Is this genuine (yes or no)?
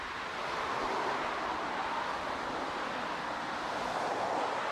yes